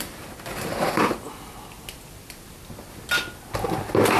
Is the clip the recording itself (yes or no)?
yes